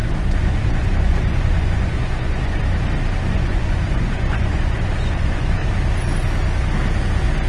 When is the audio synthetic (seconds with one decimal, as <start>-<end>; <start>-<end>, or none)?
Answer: 0.0-2.6; 3.3-5.6